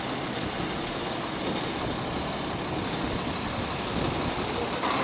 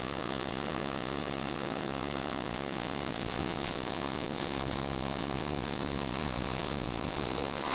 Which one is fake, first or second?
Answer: second